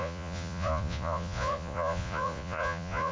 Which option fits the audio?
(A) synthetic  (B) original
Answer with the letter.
A